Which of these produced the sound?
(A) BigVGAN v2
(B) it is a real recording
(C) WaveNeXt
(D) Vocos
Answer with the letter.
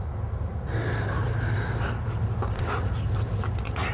B